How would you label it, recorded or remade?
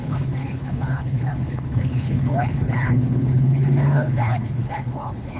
remade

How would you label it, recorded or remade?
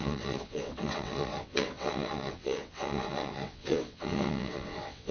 remade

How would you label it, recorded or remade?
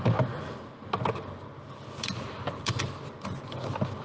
recorded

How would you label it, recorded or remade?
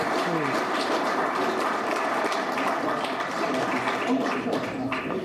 recorded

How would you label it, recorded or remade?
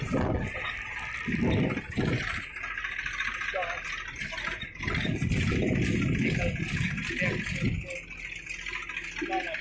recorded